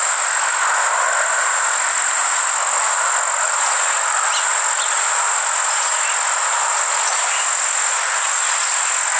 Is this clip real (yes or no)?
yes